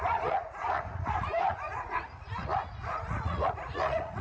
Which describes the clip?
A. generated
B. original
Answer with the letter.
A